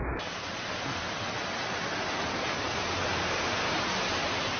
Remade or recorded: recorded